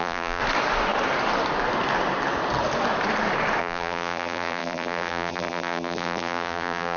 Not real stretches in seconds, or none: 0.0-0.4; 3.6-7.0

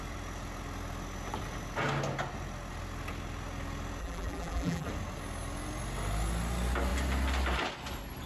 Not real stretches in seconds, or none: 4.0-4.9

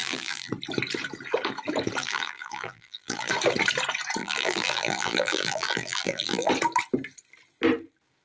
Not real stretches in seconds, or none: 0.0-0.5; 2.0-3.3; 4.2-6.5

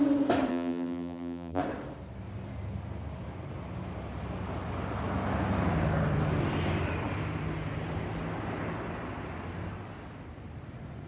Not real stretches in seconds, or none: 0.5-1.6

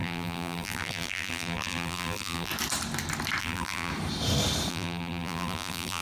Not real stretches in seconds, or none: 0.0-2.5; 3.4-3.9; 4.7-6.0

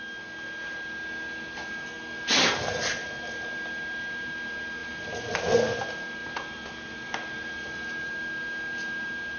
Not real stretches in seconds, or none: 4.8-5.4; 6.2-8.1